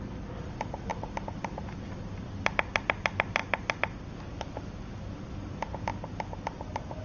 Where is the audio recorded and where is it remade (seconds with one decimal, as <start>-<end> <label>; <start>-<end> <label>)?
0.0-7.0 recorded